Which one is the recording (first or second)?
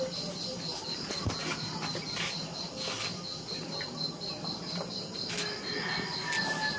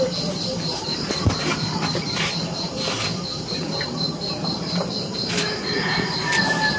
first